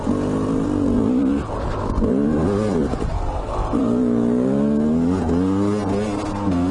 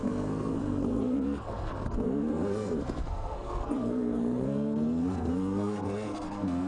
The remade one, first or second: second